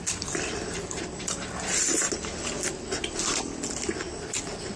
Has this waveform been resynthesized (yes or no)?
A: no